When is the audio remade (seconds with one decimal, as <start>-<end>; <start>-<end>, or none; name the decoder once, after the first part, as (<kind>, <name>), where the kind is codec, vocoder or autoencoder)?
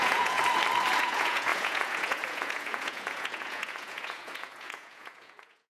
0.0-0.4 (vocoder, Vocos); 1.0-5.7